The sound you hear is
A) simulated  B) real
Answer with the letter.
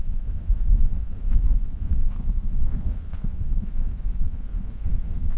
A